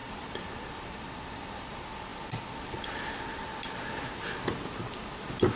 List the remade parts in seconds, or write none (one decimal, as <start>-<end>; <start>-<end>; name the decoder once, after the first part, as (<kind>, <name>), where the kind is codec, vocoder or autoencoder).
0.0-1.5 (vocoder, BigVGAN v2)

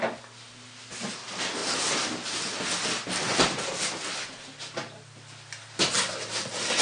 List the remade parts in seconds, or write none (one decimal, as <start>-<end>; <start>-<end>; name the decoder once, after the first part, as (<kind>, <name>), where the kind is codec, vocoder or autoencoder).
none